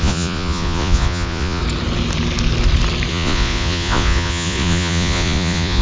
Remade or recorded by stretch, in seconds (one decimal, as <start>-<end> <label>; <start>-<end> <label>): 0.0-1.6 remade; 1.6-3.1 recorded; 3.1-5.8 remade